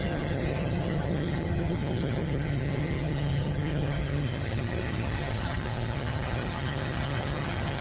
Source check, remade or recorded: remade